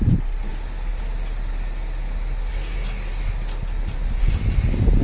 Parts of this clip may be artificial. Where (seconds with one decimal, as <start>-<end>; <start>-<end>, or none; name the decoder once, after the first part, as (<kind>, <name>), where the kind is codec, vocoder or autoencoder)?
none